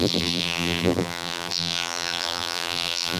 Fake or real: fake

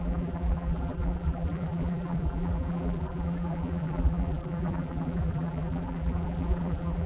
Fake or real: fake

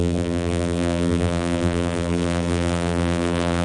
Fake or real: fake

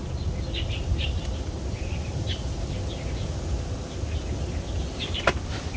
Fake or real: real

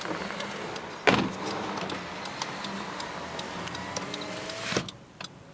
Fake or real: real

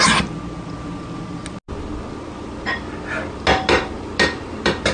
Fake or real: real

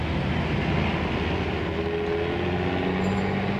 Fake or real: real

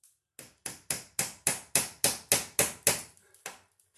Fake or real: real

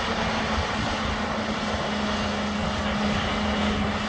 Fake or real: real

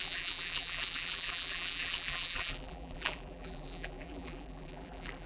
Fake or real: fake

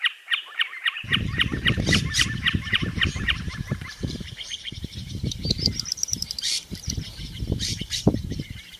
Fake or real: fake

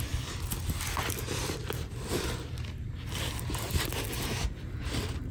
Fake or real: real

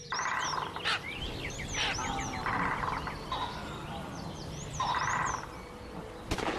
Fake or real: real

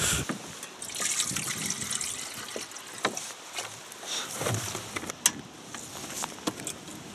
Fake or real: real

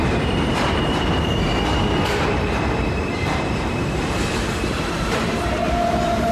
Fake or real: fake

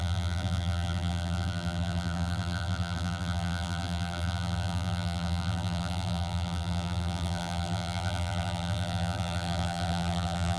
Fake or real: fake